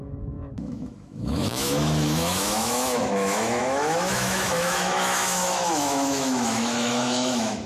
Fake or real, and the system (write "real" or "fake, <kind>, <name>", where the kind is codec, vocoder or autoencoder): fake, autoencoder, DAC-VAE